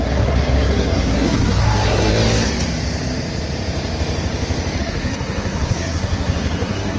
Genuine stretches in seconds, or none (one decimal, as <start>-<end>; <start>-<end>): 2.1-4.8